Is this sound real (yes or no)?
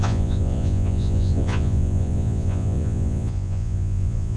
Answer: no